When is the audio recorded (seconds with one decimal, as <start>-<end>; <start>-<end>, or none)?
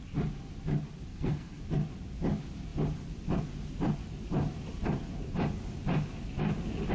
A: 0.0-1.1; 1.6-6.9